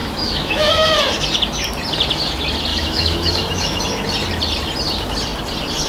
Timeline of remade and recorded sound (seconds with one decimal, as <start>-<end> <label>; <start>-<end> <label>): 0.0-1.0 remade; 1.0-2.7 recorded; 2.7-3.8 remade; 3.8-5.9 recorded